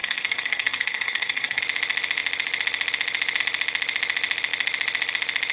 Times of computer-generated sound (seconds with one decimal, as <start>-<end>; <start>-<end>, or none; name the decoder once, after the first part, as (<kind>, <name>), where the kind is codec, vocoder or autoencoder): 0.0-1.6 (codec, SNAC)